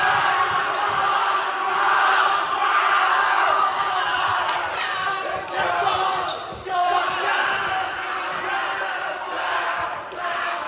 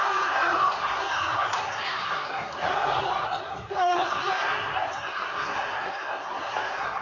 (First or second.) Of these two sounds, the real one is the first